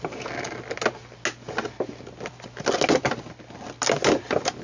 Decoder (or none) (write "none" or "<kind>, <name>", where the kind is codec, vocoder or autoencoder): none